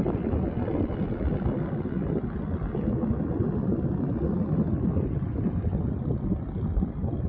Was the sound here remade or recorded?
recorded